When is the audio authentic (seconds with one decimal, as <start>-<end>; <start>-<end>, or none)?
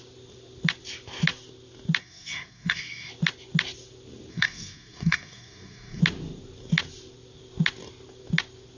0.0-2.0; 3.1-4.3; 6.0-8.8